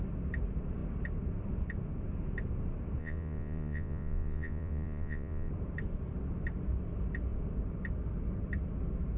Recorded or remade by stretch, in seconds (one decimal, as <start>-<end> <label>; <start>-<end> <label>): 0.0-3.0 recorded; 3.0-5.5 remade; 5.5-9.2 recorded